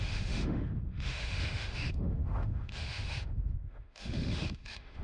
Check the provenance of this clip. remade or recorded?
remade